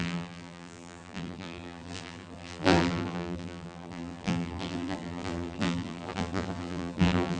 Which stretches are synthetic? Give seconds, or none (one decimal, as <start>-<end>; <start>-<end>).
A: 0.0-7.4